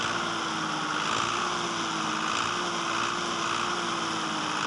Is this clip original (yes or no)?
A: yes